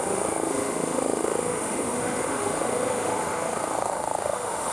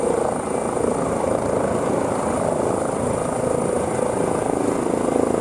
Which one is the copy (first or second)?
first